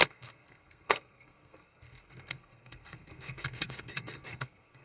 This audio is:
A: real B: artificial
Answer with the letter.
B